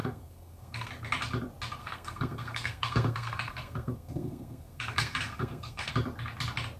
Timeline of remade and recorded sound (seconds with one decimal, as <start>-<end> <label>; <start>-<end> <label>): 0.0-0.9 remade; 0.9-1.8 recorded; 1.8-5.9 remade; 5.9-6.8 recorded